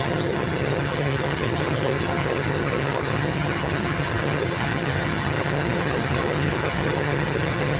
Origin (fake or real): fake